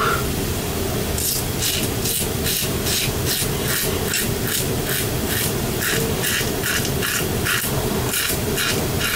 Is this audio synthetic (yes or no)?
no